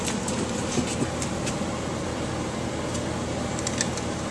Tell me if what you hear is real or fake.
real